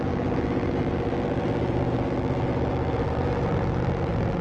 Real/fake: fake